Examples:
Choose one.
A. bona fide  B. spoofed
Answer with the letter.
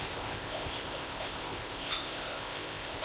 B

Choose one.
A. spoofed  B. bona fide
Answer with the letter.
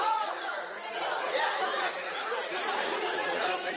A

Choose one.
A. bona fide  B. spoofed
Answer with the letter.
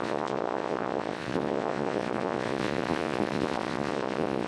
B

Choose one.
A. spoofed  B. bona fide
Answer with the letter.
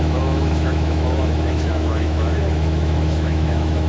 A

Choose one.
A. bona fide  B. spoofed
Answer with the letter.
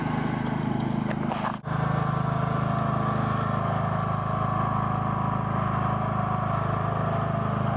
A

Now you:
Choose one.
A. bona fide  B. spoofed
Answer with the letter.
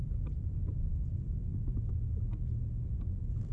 A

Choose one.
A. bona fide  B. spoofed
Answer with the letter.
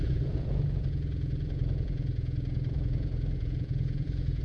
B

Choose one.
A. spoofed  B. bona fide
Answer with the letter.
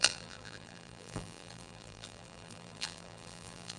A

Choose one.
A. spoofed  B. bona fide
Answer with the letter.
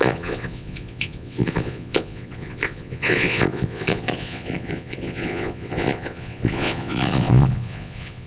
A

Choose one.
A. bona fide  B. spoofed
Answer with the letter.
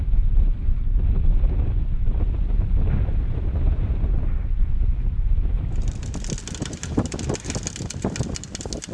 A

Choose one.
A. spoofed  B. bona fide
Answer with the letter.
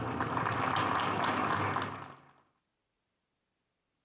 B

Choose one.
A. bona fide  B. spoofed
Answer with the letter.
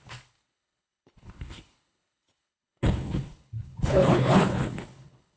B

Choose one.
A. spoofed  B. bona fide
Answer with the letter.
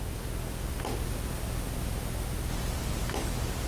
B